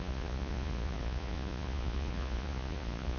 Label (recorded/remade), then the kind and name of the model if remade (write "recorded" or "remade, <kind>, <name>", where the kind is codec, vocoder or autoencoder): remade, vocoder, Vocos